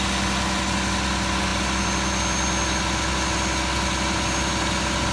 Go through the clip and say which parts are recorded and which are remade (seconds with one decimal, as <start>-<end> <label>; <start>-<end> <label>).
0.0-5.1 recorded